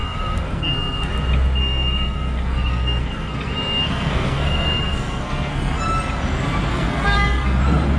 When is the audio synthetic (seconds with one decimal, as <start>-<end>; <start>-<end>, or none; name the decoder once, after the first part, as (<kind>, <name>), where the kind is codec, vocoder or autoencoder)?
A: 0.0-1.1 (codec, SNAC); 1.6-5.8; 6.7-7.6